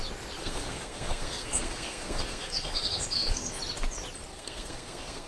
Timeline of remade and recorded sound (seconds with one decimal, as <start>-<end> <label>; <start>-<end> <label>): 0.0-0.4 recorded; 0.4-3.6 remade; 3.6-4.3 recorded; 4.3-5.3 remade